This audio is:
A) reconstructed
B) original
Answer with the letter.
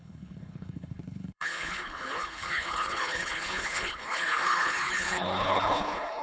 A